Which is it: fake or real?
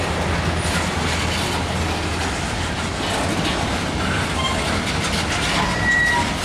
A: real